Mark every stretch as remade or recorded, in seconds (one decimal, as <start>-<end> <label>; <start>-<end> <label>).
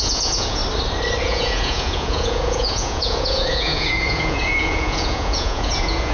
0.0-0.6 remade; 0.6-1.2 recorded; 1.2-6.1 remade